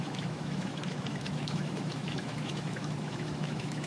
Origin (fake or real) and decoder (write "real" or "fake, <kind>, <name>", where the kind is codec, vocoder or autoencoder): fake, autoencoder, DAC-VAE